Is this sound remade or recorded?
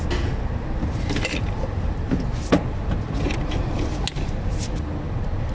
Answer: recorded